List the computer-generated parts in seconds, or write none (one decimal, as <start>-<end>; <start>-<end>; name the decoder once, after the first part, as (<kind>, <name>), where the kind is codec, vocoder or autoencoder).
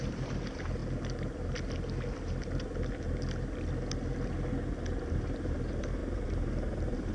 0.0-0.8 (vocoder, BigVGAN v2); 5.1-7.1